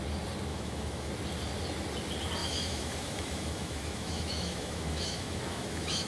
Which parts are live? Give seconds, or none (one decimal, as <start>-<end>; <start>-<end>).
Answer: 0.0-0.5; 1.1-2.4